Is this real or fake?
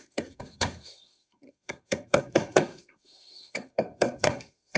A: fake